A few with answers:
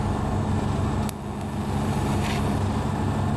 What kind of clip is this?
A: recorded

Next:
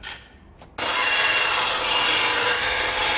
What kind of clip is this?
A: recorded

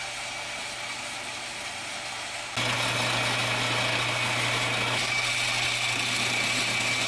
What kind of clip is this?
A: recorded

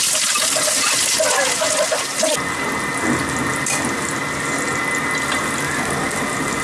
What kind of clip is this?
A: recorded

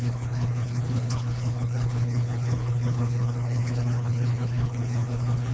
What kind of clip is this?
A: remade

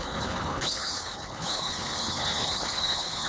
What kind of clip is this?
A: remade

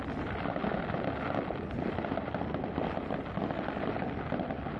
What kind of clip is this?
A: recorded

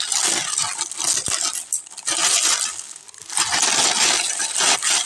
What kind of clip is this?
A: recorded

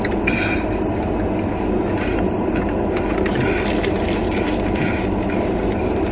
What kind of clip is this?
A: recorded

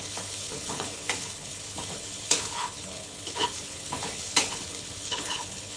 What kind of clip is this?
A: remade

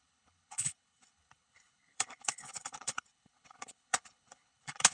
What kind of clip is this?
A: remade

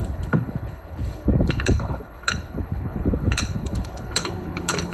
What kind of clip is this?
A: remade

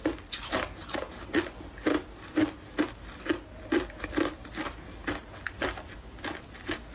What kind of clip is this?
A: recorded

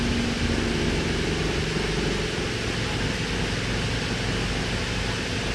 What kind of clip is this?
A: recorded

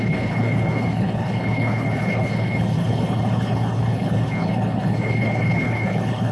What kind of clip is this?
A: remade